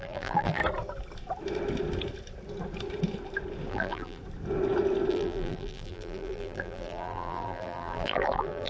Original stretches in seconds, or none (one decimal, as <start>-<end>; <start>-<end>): 0.6-3.7; 4.2-5.1